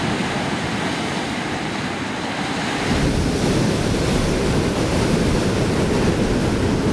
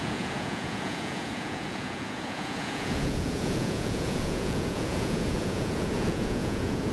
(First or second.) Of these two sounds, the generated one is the second